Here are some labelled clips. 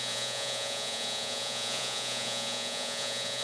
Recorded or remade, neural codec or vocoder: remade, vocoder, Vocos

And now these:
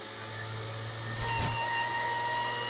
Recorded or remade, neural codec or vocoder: recorded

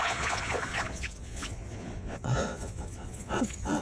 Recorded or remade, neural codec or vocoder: remade, vocoder, Vocos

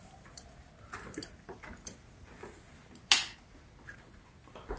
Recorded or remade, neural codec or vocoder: recorded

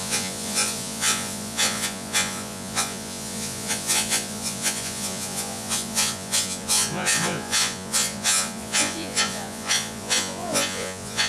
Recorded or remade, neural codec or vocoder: remade, vocoder, Vocos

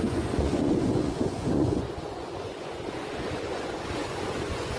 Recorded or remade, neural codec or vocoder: remade, vocoder, Vocos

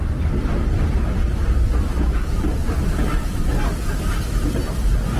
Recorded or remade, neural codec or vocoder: recorded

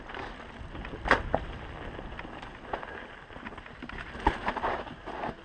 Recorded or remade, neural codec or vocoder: recorded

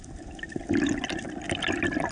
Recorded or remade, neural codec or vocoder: recorded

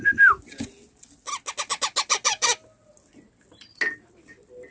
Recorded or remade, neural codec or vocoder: recorded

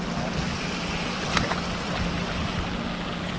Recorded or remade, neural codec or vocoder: recorded